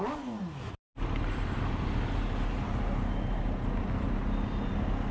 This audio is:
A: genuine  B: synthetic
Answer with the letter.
A